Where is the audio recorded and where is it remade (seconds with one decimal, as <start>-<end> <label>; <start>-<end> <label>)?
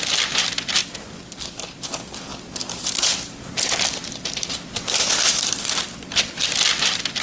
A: 0.0-0.8 recorded; 0.8-1.9 remade; 1.9-2.3 recorded; 2.3-6.6 remade; 6.6-7.2 recorded